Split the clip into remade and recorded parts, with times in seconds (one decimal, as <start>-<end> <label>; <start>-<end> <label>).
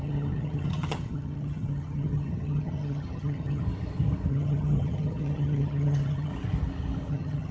0.0-3.6 remade; 3.6-4.3 recorded; 4.3-6.3 remade; 6.3-7.1 recorded; 7.1-7.5 remade